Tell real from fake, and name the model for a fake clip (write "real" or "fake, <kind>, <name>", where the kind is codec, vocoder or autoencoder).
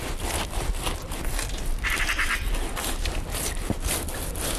real